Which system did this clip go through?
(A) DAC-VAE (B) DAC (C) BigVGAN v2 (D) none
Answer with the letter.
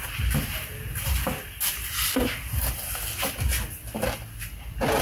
D